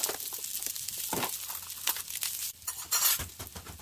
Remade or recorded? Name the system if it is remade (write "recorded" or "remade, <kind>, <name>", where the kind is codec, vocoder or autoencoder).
recorded